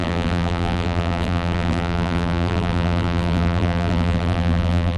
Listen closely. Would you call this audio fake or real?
fake